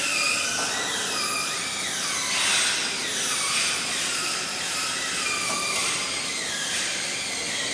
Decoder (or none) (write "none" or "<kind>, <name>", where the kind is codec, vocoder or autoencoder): none